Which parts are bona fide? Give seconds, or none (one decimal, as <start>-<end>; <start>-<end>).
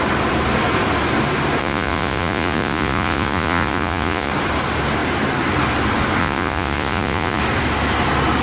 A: 0.0-1.6; 4.3-6.2; 7.4-8.4